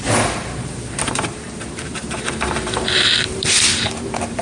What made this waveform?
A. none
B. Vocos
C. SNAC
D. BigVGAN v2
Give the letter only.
D